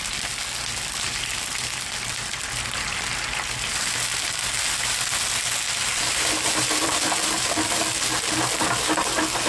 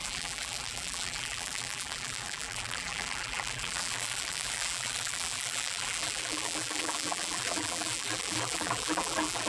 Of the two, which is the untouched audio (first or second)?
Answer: first